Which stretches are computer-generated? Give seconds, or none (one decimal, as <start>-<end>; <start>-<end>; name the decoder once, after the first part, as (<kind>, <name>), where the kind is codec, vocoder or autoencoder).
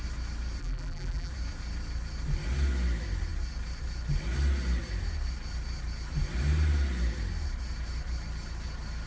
0.6-1.3 (vocoder, BigVGAN v2)